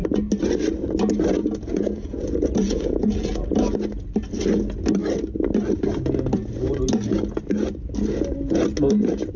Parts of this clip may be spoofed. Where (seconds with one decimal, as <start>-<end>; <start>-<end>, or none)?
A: 1.4-3.4